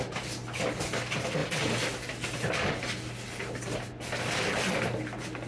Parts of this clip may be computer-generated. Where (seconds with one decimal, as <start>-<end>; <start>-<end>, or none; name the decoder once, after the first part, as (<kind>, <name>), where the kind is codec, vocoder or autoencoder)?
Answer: none